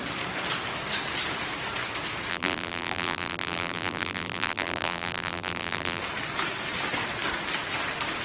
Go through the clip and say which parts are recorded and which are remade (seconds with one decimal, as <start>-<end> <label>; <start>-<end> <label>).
0.0-2.3 recorded; 2.3-6.0 remade; 6.0-8.2 recorded